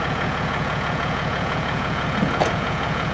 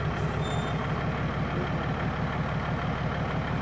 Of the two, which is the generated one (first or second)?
first